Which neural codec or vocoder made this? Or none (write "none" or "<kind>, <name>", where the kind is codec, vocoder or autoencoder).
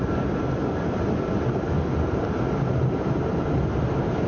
none